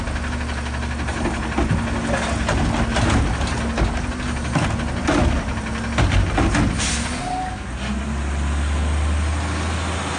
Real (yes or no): yes